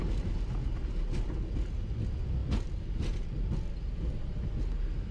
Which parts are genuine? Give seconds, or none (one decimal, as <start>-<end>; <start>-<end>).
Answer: 0.0-5.1